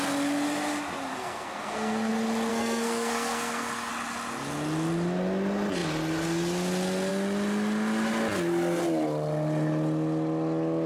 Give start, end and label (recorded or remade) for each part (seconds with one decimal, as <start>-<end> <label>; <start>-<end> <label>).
0.0-1.1 recorded; 1.1-2.1 remade; 2.1-2.5 recorded; 2.5-3.9 remade; 3.9-10.9 recorded